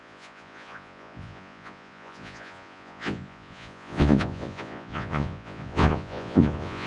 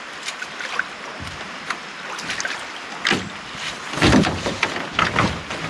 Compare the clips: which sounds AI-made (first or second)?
first